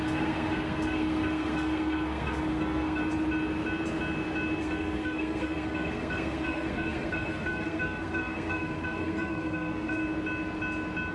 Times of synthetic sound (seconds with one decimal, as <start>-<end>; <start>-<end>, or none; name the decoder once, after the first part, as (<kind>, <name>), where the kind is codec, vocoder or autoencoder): 0.0-3.0 (codec, SNAC); 4.6-10.0